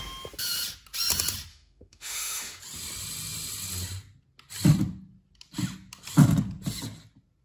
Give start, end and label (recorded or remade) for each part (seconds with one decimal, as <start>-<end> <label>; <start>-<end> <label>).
0.0-1.5 recorded; 1.5-2.6 remade; 2.6-7.4 recorded